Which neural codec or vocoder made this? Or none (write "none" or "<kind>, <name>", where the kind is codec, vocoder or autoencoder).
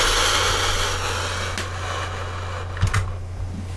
none